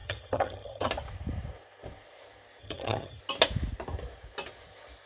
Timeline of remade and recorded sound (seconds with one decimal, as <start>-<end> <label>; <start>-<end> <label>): 0.0-0.9 remade; 0.9-2.6 recorded; 2.6-3.2 remade; 3.2-5.1 recorded